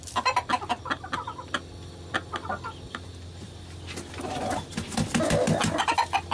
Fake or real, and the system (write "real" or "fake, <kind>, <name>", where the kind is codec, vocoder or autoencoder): real